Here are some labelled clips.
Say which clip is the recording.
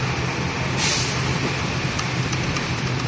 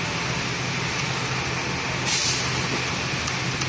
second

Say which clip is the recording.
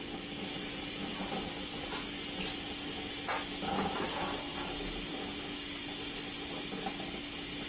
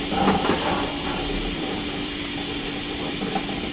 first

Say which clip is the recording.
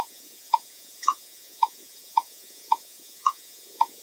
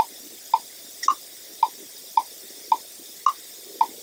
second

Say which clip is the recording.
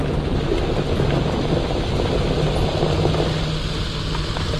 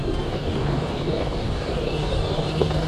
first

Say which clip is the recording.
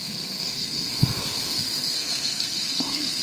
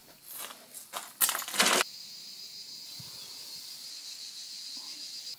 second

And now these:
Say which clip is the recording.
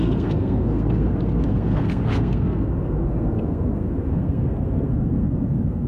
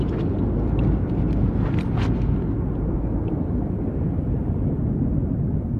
second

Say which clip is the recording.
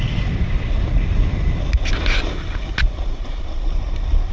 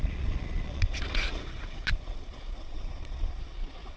first